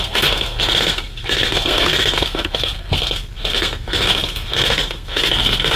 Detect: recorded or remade remade